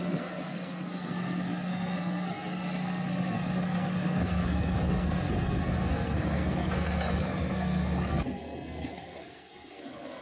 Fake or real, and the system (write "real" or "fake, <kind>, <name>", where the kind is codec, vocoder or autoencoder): fake, codec, SNAC